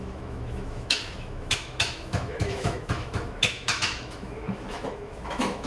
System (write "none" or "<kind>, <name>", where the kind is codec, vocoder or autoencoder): autoencoder, DAC-VAE